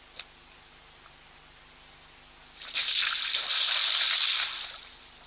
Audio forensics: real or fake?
real